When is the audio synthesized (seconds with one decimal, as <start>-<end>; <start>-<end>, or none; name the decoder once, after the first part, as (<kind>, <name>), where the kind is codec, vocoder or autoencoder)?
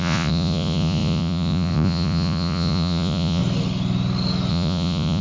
0.0-3.4 (vocoder, Vocos); 4.5-5.2